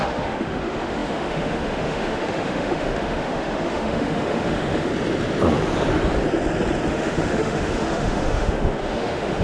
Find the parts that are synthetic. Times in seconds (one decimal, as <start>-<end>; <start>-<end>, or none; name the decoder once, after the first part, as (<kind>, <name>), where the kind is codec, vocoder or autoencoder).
0.0-4.9 (autoencoder, DAC-VAE); 6.9-9.4